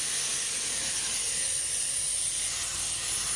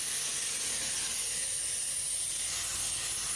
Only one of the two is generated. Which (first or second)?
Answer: first